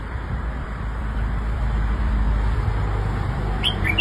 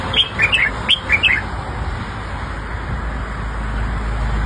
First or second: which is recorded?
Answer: second